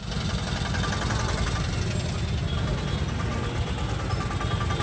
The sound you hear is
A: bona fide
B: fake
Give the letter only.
A